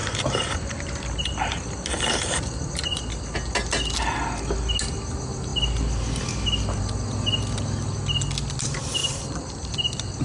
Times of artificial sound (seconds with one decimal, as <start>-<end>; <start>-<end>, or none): 0.0-2.7; 9.0-9.7